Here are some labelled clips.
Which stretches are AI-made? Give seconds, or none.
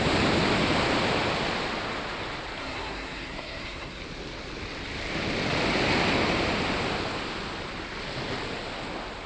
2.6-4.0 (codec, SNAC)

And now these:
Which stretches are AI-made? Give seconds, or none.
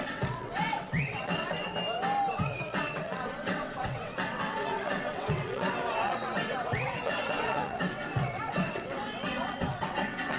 0.0-1.7 (vocoder, WaveNeXt); 2.3-10.4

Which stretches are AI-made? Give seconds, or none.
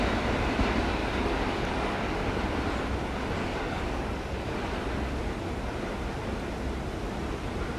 1.0-2.4 (codec, DAC); 3.4-4.8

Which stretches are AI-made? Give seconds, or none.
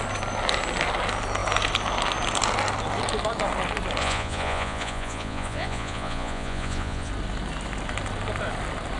4.0-7.1 (vocoder, Vocos)